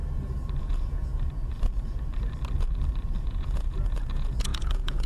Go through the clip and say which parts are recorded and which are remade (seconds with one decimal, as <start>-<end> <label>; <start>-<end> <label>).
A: 0.0-0.6 recorded; 0.6-1.1 remade; 1.1-3.2 recorded; 3.2-5.1 remade